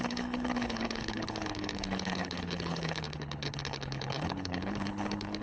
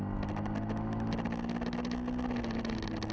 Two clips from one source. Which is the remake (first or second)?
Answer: first